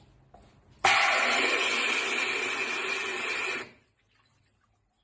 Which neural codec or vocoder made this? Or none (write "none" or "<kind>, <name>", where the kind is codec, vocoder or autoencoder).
none